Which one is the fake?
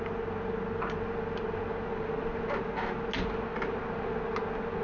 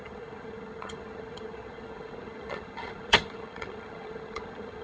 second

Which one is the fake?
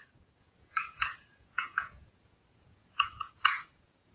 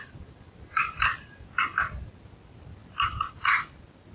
first